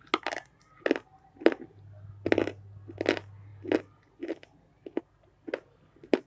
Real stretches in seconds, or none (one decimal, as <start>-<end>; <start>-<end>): 0.0-6.3

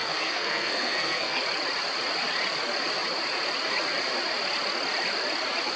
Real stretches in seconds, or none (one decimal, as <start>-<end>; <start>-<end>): 1.4-5.8

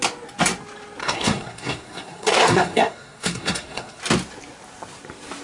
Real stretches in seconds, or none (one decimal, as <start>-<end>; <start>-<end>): 0.0-1.0; 4.0-5.4

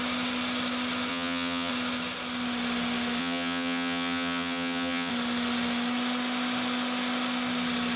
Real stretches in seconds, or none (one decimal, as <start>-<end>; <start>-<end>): 0.0-1.1; 1.7-3.2; 5.1-8.0

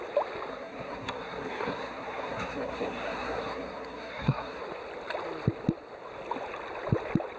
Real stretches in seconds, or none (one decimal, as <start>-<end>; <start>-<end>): 0.0-0.5; 4.6-7.4

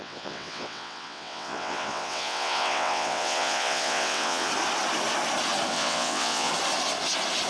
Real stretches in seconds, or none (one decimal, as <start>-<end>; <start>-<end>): 4.5-5.7; 6.5-7.5

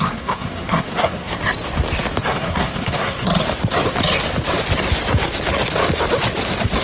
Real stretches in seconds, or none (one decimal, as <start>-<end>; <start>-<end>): 1.3-2.2; 3.3-6.8